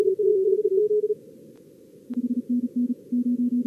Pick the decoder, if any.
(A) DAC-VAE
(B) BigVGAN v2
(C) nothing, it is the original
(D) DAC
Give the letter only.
C